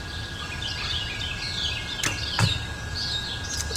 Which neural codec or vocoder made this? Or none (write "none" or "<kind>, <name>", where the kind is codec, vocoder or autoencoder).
none